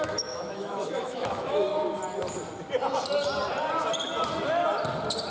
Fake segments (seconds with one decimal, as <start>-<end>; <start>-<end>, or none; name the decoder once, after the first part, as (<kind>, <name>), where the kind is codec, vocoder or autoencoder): 0.0-1.7 (autoencoder, DAC-VAE)